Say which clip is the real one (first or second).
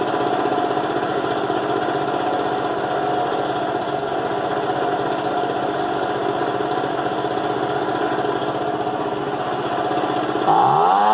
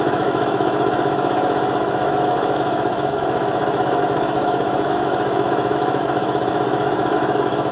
first